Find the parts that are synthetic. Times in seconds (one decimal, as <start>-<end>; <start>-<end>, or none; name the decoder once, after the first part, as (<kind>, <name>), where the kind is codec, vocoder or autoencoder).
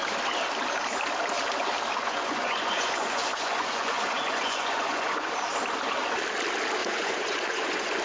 2.0-5.3 (vocoder, Vocos); 6.8-8.0